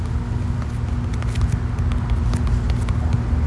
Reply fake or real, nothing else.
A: real